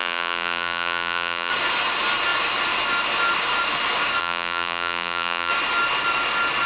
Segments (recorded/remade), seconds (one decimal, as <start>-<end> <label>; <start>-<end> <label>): 0.0-1.5 remade; 1.5-4.2 recorded; 4.2-5.5 remade; 5.5-6.7 recorded